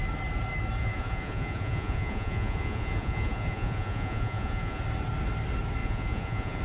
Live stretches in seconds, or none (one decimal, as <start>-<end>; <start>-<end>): 0.0-0.8; 4.8-5.8